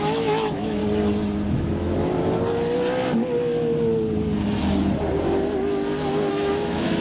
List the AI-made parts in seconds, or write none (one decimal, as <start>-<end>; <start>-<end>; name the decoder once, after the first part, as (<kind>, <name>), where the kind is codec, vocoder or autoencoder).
0.0-0.8 (autoencoder, DAC-VAE); 1.5-2.1; 6.3-7.0